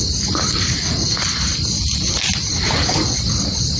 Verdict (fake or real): real